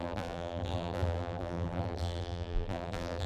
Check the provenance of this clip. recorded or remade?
remade